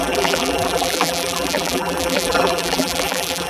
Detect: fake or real fake